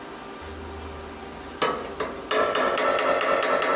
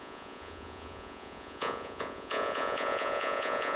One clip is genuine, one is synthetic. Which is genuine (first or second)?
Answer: first